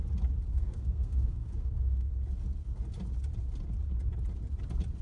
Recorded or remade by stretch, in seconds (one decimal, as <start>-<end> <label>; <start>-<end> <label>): 0.0-0.5 recorded; 0.5-2.1 remade; 2.1-5.0 recorded

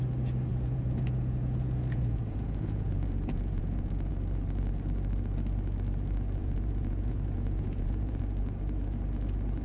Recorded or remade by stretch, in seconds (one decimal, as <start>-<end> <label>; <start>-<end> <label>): 0.0-0.5 recorded; 0.5-4.1 remade; 4.1-6.4 recorded; 6.4-8.2 remade; 8.2-9.6 recorded

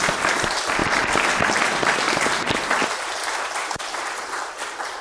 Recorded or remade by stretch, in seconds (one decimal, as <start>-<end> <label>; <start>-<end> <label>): 0.0-5.0 recorded

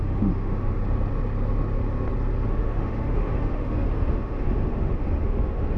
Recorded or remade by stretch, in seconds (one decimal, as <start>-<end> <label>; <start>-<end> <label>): 0.0-0.8 remade; 0.8-2.5 recorded; 2.5-5.8 remade

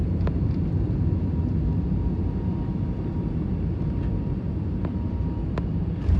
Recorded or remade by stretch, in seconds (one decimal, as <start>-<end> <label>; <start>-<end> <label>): 0.0-6.2 recorded

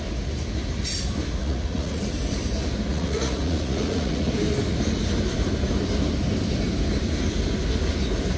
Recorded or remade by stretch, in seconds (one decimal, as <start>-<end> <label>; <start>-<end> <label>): 0.0-1.4 recorded; 1.4-2.0 remade; 2.0-2.9 recorded; 2.9-4.3 remade; 4.3-8.4 recorded

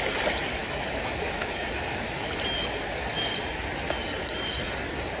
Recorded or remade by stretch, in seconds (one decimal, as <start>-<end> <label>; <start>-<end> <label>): 0.0-0.6 recorded; 0.6-2.3 remade; 2.3-5.2 recorded